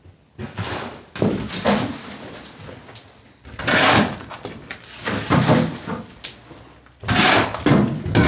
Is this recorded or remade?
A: recorded